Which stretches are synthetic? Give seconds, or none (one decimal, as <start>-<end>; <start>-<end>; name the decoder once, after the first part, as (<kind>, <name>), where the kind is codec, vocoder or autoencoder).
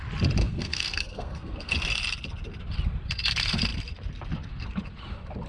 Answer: 0.4-1.7 (codec, SNAC)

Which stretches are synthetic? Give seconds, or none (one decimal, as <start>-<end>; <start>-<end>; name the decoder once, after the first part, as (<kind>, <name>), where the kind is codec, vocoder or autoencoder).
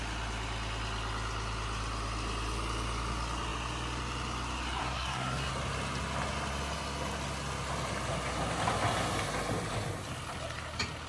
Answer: 4.8-5.5 (codec, SNAC)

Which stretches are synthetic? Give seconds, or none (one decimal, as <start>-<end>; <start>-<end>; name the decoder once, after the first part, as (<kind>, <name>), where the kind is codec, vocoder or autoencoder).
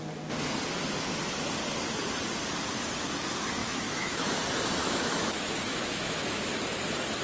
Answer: 3.6-4.3 (autoencoder, DAC-VAE); 4.8-6.4